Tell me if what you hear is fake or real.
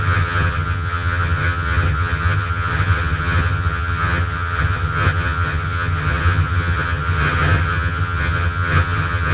fake